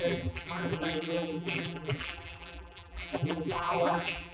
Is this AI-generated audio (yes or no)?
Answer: yes